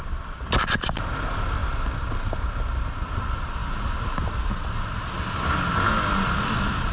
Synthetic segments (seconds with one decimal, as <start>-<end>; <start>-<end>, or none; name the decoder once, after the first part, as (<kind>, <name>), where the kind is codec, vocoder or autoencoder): none